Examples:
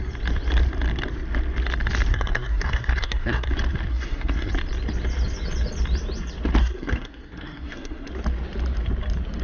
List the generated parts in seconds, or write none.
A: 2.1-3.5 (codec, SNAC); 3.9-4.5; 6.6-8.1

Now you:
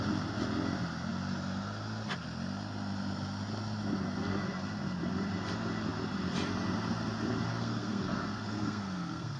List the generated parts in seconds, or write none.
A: 7.5-9.4 (codec, SNAC)

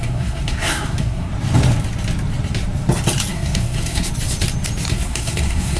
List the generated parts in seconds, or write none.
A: 0.0-1.3 (codec, SNAC); 3.3-4.1; 4.9-5.8

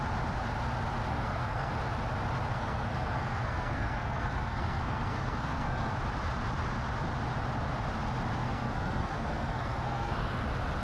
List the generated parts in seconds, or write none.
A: 1.1-1.7 (codec, SNAC); 2.5-5.9; 8.4-10.4